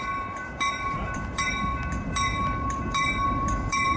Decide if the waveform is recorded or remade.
remade